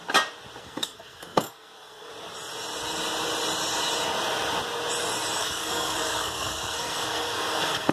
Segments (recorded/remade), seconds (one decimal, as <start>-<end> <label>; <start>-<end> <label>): 0.0-0.6 recorded; 0.6-2.1 remade; 2.1-5.4 recorded; 5.4-7.9 remade

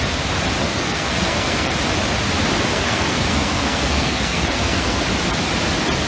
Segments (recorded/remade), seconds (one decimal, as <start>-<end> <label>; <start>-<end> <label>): 0.0-0.6 recorded; 0.6-1.7 remade; 1.7-2.7 recorded; 2.7-5.0 remade; 5.0-6.1 recorded

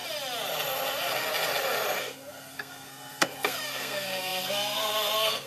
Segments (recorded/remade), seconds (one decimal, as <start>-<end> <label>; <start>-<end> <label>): 0.0-2.0 recorded; 2.0-5.5 remade

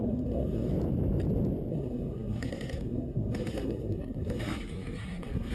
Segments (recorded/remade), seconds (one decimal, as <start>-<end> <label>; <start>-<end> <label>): 0.0-0.7 remade; 0.7-1.7 recorded; 1.7-5.5 remade

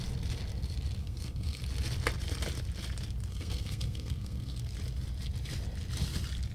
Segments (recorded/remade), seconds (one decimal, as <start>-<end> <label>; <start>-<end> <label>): 0.0-1.0 recorded; 1.0-1.6 remade; 1.6-3.3 recorded; 3.3-4.6 remade; 4.6-6.5 recorded

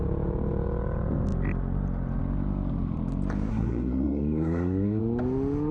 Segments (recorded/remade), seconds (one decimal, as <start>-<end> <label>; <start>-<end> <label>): 0.0-3.5 recorded; 3.5-5.0 remade; 5.0-5.7 recorded

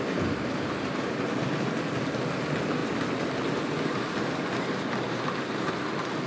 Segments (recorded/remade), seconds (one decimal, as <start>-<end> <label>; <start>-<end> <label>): 0.0-6.3 recorded